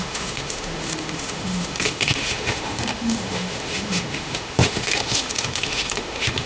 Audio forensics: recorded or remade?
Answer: remade